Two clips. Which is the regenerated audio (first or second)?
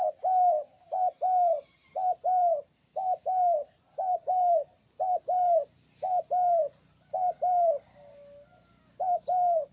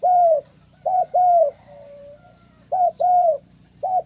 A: second